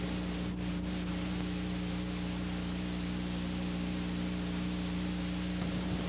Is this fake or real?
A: real